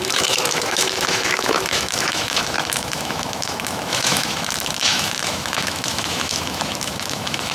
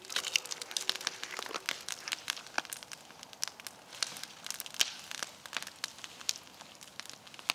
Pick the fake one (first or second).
first